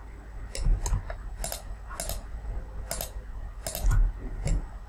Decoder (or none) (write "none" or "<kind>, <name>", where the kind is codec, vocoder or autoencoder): none